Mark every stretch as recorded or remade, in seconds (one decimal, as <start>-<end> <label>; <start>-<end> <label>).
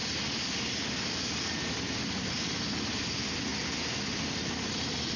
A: 0.0-5.2 recorded